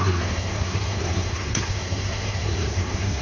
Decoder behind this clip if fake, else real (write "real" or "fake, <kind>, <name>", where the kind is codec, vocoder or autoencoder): fake, codec, SNAC